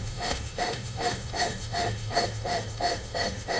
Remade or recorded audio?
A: remade